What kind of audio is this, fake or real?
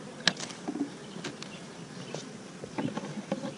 real